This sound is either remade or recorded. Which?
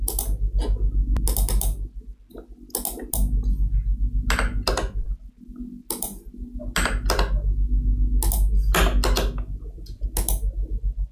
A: recorded